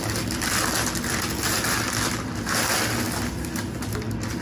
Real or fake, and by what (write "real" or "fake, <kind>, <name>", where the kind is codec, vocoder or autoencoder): real